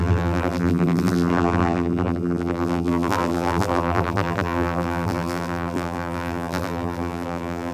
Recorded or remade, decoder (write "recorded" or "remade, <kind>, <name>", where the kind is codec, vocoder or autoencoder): remade, vocoder, BigVGAN v2